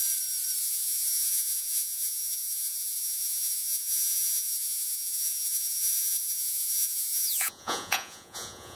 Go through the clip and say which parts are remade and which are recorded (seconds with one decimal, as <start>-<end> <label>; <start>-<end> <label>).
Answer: 0.0-0.6 recorded; 0.6-8.8 remade